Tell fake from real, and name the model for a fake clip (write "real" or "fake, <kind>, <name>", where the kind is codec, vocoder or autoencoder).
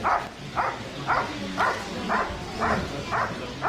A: real